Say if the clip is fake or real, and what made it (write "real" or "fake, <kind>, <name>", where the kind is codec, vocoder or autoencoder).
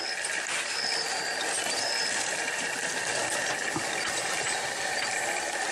real